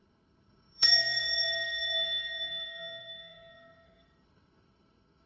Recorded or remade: remade